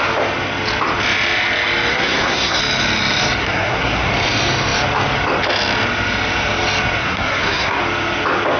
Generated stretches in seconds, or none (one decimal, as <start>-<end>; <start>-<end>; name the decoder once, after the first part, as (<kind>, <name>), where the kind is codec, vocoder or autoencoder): 1.9-2.6 (codec, SNAC); 3.4-4.1; 7.0-7.8